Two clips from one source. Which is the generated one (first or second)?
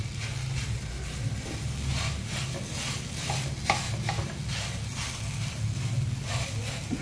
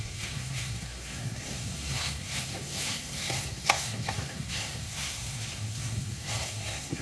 second